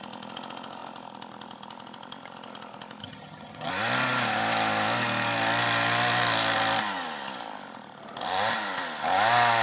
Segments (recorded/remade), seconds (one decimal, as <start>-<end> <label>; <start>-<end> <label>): 0.0-3.0 recorded; 3.0-3.7 remade; 3.7-9.6 recorded